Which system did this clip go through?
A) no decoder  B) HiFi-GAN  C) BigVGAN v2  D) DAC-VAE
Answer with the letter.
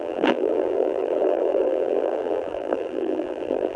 C